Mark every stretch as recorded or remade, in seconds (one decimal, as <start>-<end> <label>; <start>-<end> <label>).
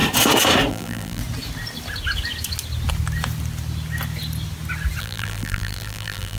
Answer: 0.0-0.7 recorded; 0.7-1.2 remade; 1.2-5.0 recorded; 5.0-6.4 remade